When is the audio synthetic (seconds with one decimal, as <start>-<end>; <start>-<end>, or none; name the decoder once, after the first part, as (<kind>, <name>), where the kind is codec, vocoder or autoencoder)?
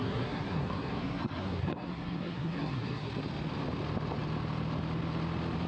0.0-3.1 (codec, SNAC)